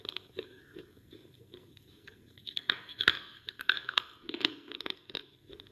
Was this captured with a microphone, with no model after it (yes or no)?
no